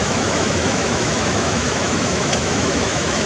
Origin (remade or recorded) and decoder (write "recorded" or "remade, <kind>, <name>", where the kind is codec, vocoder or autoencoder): remade, autoencoder, DAC-VAE